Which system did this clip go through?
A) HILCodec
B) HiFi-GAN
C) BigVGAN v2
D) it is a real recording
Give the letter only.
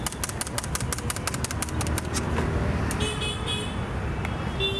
D